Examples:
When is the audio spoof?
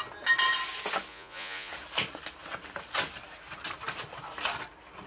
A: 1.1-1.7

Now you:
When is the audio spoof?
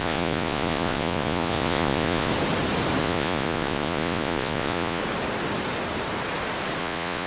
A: 0.0-2.3; 3.0-5.0; 6.8-7.3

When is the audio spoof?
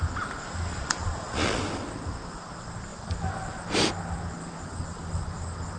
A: 0.7-1.6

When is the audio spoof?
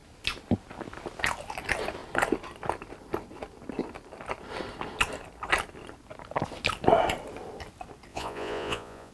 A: 8.1-9.1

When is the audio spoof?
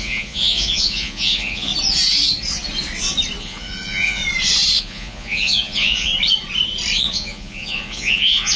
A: 0.0-1.7; 3.4-4.2; 4.8-6.1; 7.0-8.6